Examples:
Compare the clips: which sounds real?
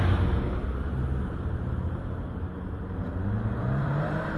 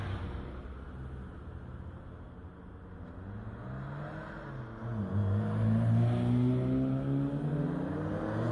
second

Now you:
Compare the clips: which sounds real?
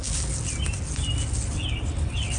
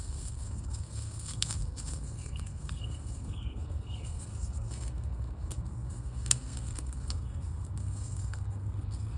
first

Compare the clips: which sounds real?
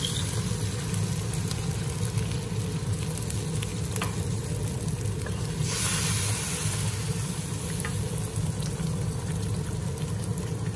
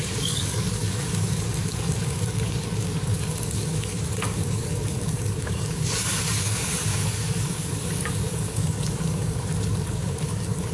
first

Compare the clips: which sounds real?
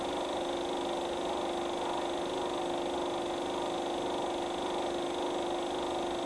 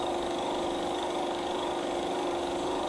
first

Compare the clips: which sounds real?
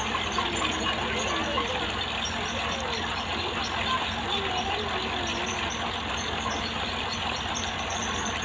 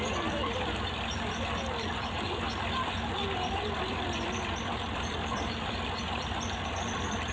first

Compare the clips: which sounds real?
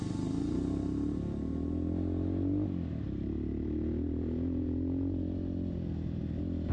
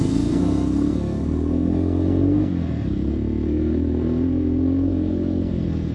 first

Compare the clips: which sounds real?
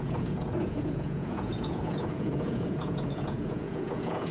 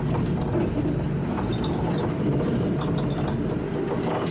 second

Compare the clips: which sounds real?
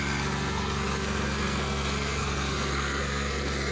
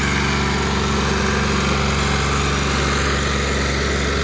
second